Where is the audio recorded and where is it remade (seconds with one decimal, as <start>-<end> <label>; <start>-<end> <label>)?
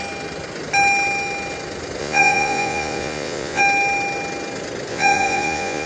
0.0-2.0 recorded; 2.0-3.6 remade; 3.6-4.9 recorded; 4.9-5.9 remade